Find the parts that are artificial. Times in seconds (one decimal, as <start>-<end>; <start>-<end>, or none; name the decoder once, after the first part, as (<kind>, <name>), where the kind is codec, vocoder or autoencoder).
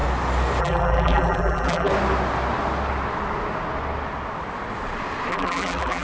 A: 0.6-1.9 (vocoder, BigVGAN v2); 5.3-6.0